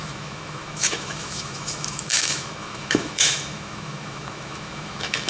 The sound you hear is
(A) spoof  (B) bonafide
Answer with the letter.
A